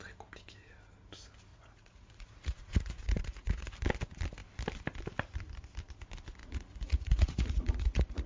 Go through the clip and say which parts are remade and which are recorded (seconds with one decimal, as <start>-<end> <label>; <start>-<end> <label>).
0.0-1.5 recorded; 1.5-3.6 remade; 3.6-6.4 recorded; 6.4-8.3 remade